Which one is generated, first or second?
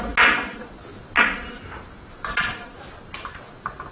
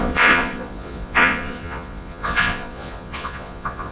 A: second